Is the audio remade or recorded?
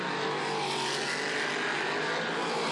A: recorded